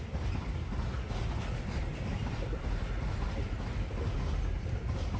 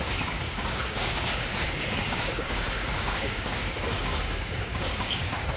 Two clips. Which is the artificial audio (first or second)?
second